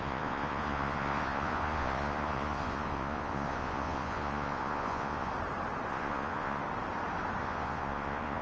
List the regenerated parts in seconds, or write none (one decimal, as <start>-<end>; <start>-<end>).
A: 0.0-5.3; 5.9-6.6; 7.4-8.4